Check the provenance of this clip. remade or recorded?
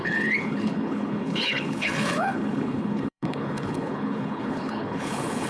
remade